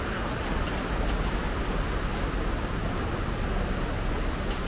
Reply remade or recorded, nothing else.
recorded